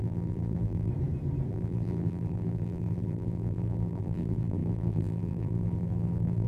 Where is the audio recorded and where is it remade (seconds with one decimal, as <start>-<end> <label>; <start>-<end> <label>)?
0.0-0.9 remade; 0.9-1.5 recorded; 1.5-6.5 remade